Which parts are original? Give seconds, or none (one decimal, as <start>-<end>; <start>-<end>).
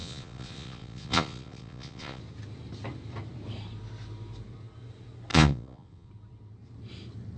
2.2-5.3; 6.1-7.4